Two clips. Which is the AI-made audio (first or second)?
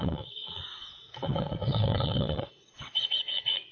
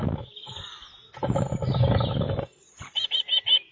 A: first